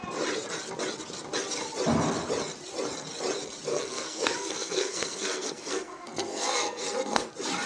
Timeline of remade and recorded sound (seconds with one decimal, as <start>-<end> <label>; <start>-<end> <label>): 0.0-3.7 recorded; 3.7-7.3 remade; 7.3-7.7 recorded